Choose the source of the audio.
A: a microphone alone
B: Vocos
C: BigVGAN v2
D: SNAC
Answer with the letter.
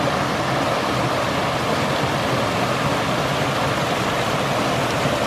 A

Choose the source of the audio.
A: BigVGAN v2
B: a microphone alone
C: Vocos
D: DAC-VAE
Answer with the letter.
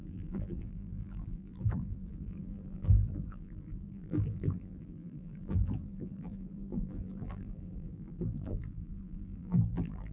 A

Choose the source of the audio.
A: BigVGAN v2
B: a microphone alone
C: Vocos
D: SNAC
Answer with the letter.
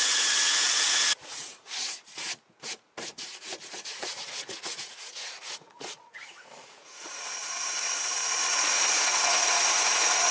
C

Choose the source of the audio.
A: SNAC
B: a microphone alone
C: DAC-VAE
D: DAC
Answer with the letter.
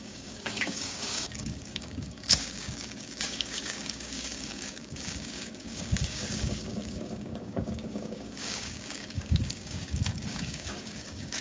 D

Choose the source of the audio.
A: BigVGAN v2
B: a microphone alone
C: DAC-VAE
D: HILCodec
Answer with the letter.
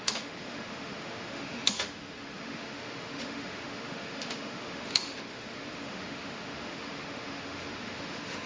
C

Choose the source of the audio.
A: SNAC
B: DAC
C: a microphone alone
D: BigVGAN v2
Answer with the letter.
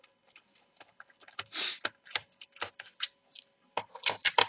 C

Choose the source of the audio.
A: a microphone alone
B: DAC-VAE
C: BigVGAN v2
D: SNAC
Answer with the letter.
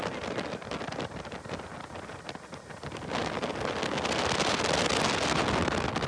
A